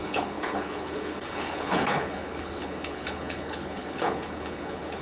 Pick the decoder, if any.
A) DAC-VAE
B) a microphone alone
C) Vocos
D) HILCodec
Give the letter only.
D